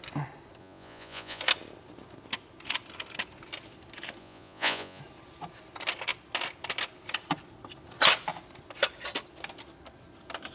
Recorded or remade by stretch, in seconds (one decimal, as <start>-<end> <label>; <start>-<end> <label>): 0.0-0.6 recorded; 0.6-1.4 remade; 1.4-4.2 recorded; 4.2-5.0 remade; 5.0-10.5 recorded

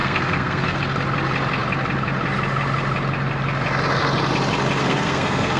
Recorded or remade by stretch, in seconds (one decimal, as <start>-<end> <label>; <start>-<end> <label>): 0.0-0.8 remade; 0.8-4.8 recorded; 4.8-5.6 remade

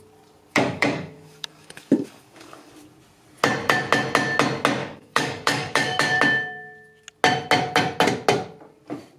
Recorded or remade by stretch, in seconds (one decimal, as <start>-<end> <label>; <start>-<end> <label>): 0.0-0.5 recorded; 0.5-2.7 remade; 2.7-4.8 recorded; 4.8-6.2 remade; 6.2-9.2 recorded

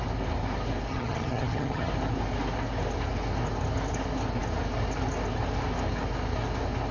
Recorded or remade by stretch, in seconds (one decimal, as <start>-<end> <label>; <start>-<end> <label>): 0.0-0.9 recorded; 0.9-1.9 remade; 1.9-6.9 recorded

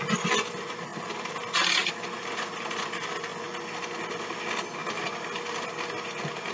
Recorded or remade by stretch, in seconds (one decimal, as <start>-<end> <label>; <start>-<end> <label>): 0.0-6.5 recorded